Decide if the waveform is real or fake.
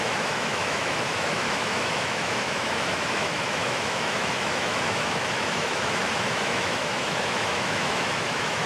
fake